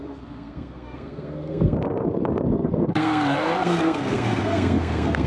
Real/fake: fake